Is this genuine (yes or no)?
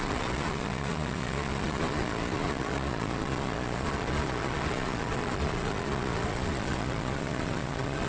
no